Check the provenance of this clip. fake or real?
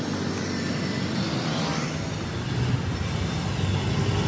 real